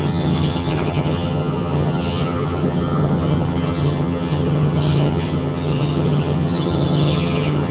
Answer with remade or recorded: remade